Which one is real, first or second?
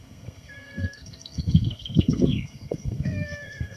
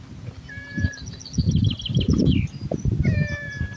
second